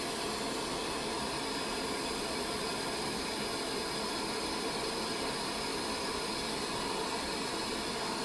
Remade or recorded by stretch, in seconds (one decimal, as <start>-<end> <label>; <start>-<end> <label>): 0.0-5.7 recorded; 5.7-7.5 remade; 7.5-8.2 recorded